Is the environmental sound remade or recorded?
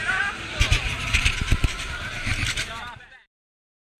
remade